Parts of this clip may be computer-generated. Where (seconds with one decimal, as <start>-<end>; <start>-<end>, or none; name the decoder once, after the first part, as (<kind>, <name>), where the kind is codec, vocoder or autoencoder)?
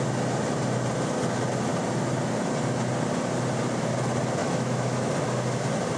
4.4-5.1 (autoencoder, DAC-VAE)